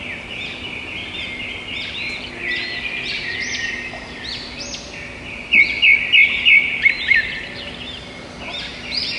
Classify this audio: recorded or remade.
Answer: recorded